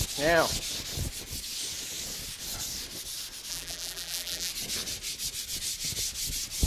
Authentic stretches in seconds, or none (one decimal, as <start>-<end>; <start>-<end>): 0.0-3.5; 4.5-6.7